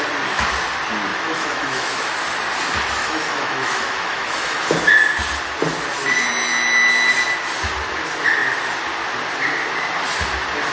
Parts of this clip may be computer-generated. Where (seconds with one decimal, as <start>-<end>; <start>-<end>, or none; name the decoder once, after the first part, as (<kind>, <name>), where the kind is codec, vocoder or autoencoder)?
1.1-2.1 (autoencoder, DAC-VAE); 3.0-4.6

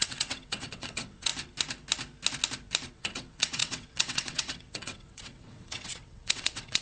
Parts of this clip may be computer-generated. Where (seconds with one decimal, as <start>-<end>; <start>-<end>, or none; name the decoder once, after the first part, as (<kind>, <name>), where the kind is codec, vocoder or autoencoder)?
0.0-1.3 (vocoder, WaveNeXt); 2.9-6.8

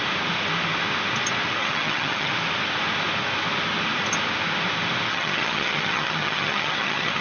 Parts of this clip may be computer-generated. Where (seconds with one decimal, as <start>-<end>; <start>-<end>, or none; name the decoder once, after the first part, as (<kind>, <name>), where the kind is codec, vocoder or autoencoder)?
1.6-2.3 (vocoder, HiFi-GAN); 5.1-7.2

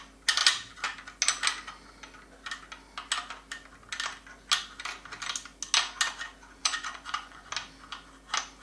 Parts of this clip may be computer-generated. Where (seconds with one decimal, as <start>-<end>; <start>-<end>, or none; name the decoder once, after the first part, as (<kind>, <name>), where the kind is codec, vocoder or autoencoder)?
6.6-7.5 (vocoder, Vocos)

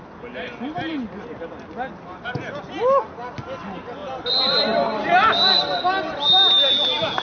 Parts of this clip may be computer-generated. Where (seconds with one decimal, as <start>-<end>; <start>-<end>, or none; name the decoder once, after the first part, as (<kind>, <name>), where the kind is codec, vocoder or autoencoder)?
none

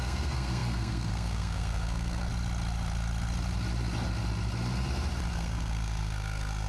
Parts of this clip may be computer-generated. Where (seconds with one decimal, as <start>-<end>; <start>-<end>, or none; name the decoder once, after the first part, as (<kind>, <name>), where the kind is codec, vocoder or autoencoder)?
0.0-2.3 (codec, SNAC); 5.3-6.7

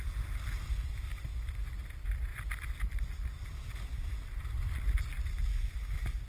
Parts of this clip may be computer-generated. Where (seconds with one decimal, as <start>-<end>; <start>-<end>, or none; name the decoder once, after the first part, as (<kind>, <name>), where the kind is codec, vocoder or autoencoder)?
none